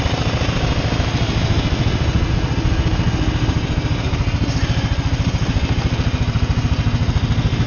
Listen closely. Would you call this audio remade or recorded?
recorded